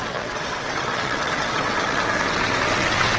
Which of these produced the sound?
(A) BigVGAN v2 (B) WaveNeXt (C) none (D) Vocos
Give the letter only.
B